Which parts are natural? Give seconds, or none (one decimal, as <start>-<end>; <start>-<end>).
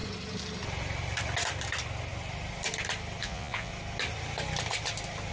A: 0.0-3.2; 3.7-5.3